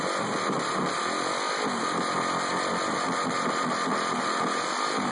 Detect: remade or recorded remade